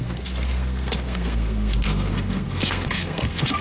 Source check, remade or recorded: remade